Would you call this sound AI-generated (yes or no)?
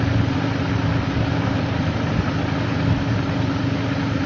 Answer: no